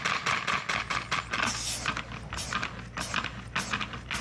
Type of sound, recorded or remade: recorded